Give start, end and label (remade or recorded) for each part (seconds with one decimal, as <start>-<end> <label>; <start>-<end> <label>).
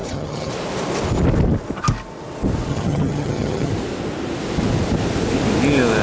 0.0-0.5 remade; 0.5-2.7 recorded; 2.7-3.7 remade; 3.7-6.0 recorded